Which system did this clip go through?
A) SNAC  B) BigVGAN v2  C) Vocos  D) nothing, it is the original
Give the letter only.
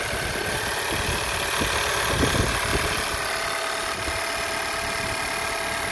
D